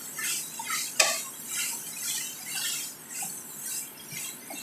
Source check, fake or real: real